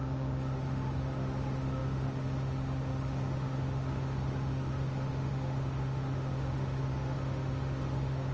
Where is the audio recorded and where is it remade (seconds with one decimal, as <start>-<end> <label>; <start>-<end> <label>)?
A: 0.0-8.3 remade